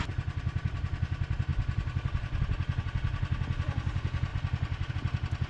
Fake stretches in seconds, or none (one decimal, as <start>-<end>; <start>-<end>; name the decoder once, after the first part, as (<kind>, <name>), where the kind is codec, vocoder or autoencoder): 1.5-2.8 (vocoder, BigVGAN v2); 4.3-4.9